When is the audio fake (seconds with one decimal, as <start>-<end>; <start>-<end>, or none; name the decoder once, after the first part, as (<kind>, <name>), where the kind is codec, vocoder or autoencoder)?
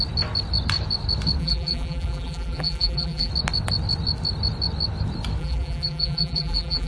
1.4-3.3 (vocoder, BigVGAN v2); 5.4-6.9